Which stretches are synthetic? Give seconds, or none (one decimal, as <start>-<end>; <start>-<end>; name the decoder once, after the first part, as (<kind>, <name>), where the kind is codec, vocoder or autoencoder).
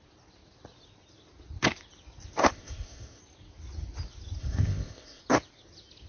2.4-3.2 (codec, ZipCodec); 4.4-5.2